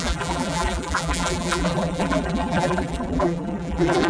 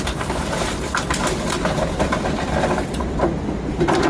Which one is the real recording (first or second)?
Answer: second